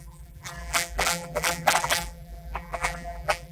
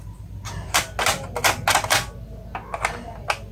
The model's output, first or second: first